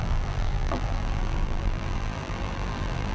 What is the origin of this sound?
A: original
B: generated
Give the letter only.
B